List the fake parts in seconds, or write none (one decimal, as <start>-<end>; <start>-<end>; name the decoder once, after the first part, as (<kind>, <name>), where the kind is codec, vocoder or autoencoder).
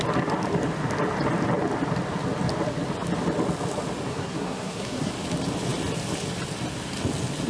4.1-5.1 (codec, SNAC)